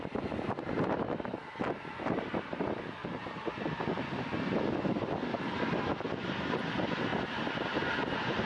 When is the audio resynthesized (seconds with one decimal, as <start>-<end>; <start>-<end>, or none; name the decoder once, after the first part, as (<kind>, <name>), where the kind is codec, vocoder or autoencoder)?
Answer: none